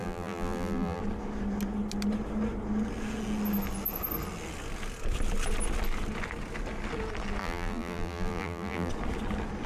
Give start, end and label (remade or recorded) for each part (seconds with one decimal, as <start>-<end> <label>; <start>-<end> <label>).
0.0-1.0 remade; 1.0-7.4 recorded; 7.4-8.9 remade; 8.9-9.7 recorded